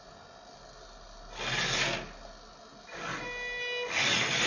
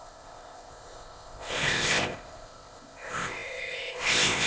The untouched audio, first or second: first